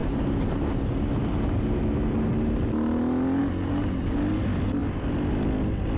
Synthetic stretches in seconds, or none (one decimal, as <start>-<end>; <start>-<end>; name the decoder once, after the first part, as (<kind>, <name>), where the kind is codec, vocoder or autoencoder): 0.0-1.8 (vocoder, BigVGAN v2)